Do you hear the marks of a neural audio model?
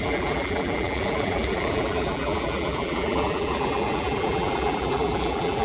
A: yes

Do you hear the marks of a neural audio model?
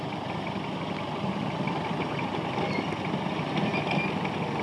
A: no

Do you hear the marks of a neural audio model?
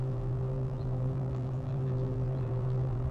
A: yes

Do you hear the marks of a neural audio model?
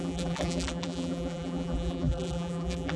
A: yes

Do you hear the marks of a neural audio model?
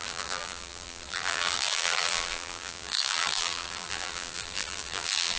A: yes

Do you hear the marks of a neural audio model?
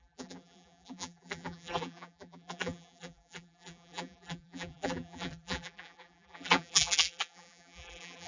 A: yes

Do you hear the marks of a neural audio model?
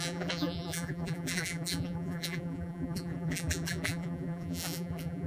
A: yes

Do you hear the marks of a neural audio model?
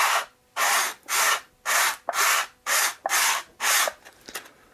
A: no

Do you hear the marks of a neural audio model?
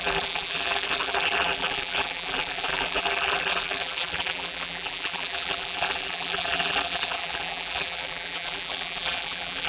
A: yes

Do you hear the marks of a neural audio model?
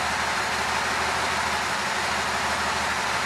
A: no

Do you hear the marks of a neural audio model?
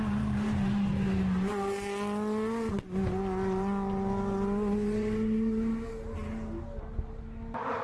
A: no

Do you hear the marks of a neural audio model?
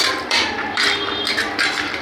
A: yes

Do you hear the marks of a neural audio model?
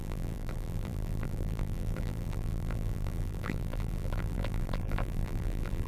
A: yes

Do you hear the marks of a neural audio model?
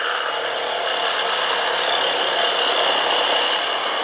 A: no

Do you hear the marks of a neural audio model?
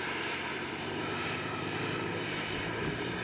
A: yes